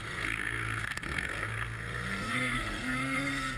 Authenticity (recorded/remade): remade